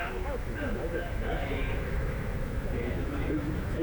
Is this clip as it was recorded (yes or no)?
no